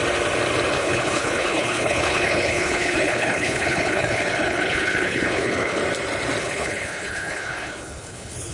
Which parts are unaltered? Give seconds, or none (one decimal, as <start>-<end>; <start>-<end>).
0.0-0.7; 5.8-6.4